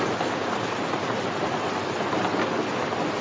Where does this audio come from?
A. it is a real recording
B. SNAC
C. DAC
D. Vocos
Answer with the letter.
A